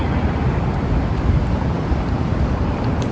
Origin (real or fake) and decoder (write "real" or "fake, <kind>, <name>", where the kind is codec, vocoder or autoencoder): real